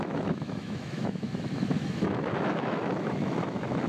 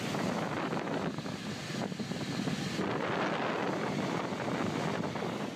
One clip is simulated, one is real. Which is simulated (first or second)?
first